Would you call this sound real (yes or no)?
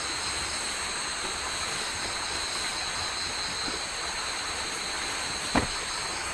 yes